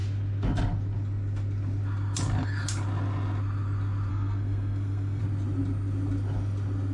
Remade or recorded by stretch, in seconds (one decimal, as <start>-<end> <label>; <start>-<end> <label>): 0.0-4.1 recorded; 4.1-5.2 remade; 5.2-6.9 recorded